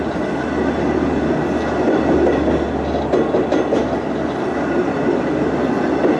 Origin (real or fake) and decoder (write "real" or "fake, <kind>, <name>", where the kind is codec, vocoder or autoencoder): real